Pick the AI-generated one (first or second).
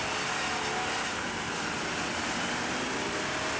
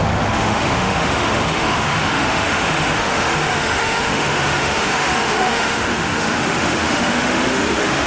second